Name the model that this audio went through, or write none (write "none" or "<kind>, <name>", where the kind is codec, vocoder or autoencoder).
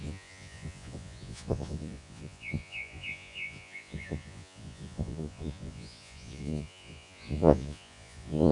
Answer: vocoder, Vocos